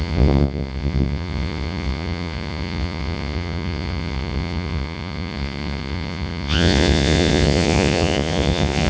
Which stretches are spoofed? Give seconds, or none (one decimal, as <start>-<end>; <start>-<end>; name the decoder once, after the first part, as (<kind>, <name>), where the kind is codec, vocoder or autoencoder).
0.0-8.9 (vocoder, Vocos)